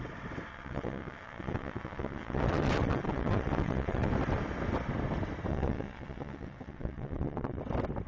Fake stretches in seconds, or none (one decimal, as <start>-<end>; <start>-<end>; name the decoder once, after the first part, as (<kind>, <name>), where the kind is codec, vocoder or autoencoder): 0.5-4.1 (vocoder, WaveNeXt); 5.5-7.6